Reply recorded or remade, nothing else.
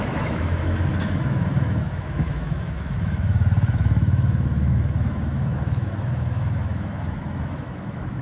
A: remade